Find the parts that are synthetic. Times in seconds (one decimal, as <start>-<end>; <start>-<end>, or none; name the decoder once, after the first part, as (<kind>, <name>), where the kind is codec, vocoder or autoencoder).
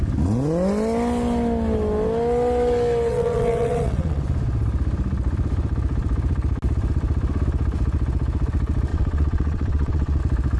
3.1-4.2 (vocoder, WaveNeXt); 8.9-10.2